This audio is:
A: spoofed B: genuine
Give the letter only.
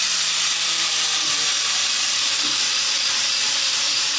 A